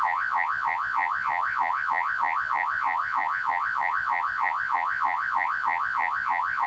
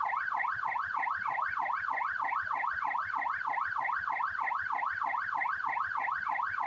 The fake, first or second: first